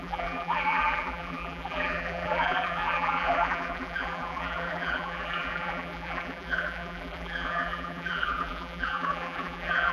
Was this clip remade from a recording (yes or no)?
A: yes